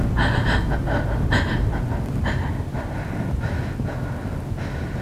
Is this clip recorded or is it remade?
recorded